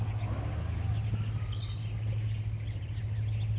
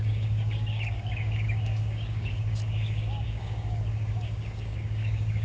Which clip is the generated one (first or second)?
second